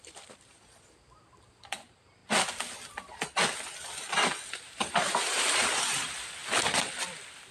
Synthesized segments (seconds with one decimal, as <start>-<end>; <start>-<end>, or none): 0.0-2.2; 4.5-6.4; 7.1-7.5